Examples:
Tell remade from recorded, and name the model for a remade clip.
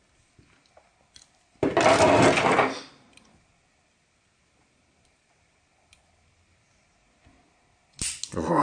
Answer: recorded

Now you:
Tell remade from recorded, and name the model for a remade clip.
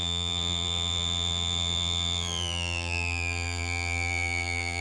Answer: remade, vocoder, BigVGAN v2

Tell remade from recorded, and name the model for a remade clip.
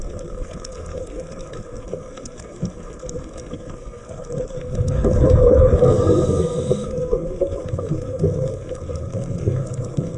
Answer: remade, codec, SNAC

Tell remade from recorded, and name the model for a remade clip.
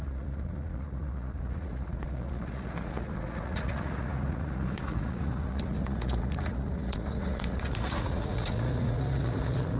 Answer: remade, vocoder, Vocos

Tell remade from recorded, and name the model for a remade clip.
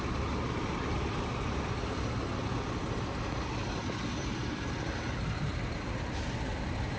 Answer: recorded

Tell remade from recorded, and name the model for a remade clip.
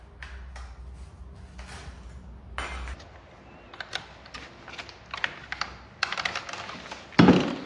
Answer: recorded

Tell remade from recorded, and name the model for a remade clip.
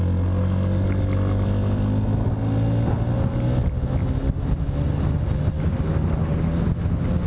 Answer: recorded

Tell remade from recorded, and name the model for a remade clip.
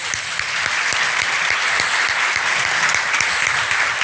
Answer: recorded